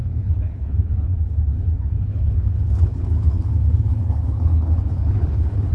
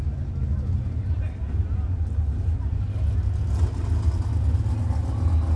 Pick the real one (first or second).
second